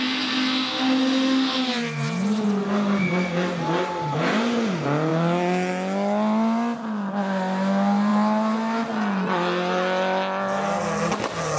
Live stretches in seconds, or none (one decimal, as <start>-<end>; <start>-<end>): 0.0-11.6